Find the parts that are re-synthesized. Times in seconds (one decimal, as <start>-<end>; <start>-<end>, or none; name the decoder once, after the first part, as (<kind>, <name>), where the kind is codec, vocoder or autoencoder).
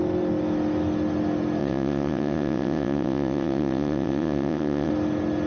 1.6-4.9 (vocoder, WaveNeXt)